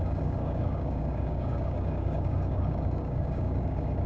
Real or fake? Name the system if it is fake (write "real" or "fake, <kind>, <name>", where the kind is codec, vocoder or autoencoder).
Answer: fake, codec, DAC